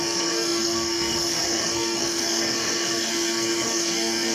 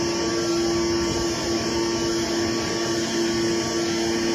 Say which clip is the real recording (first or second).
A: second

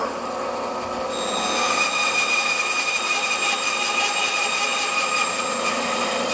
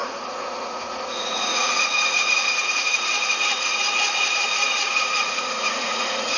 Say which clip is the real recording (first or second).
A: first